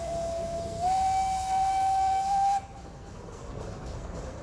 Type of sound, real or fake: fake